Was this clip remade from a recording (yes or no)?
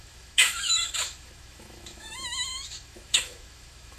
yes